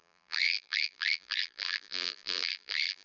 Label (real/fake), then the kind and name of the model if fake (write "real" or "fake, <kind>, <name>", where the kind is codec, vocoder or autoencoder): fake, vocoder, BigVGAN v2